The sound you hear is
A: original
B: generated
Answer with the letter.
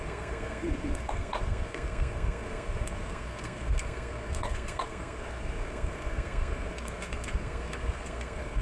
B